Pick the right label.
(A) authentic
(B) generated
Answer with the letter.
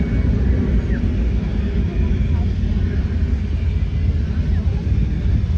A